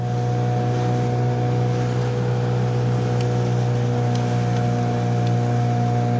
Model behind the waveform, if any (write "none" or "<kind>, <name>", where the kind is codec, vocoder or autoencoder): none